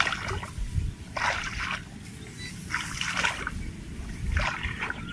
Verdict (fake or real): real